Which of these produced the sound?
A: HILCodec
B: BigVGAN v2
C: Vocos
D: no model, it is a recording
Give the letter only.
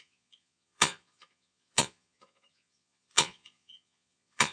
C